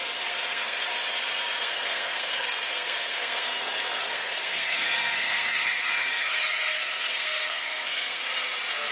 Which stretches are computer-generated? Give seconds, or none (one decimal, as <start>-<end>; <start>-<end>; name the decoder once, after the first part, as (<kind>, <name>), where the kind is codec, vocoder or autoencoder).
0.0-0.8 (codec, SNAC); 1.6-8.2